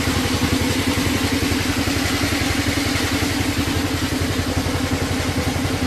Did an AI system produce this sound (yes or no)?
no